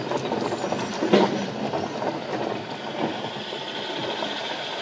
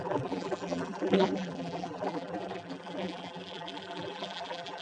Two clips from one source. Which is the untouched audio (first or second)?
first